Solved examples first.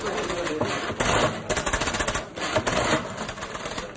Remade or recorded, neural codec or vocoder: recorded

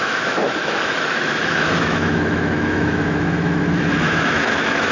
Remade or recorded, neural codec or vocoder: remade, autoencoder, DAC-VAE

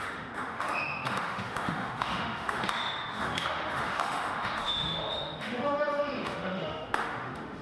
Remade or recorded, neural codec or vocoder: remade, autoencoder, DAC-VAE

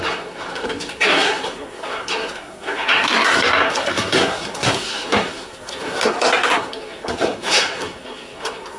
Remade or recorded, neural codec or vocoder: remade, codec, SNAC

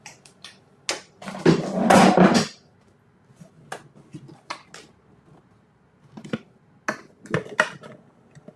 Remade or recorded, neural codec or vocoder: recorded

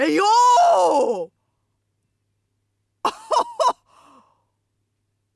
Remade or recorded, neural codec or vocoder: recorded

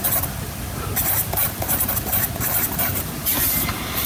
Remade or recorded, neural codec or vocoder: remade, vocoder, BigVGAN v2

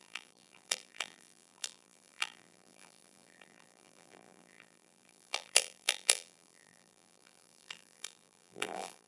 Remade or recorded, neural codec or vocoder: remade, vocoder, BigVGAN v2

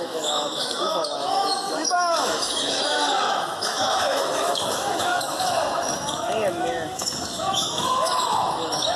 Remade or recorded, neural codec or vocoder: remade, autoencoder, DAC-VAE